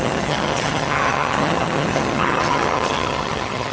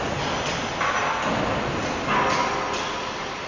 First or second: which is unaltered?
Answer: second